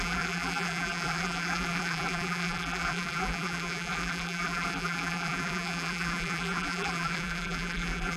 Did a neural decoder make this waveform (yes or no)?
yes